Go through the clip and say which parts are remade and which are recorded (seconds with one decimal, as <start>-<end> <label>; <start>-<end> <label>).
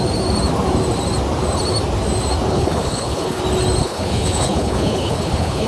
0.0-2.5 recorded; 2.5-3.4 remade; 3.4-3.8 recorded; 3.8-5.7 remade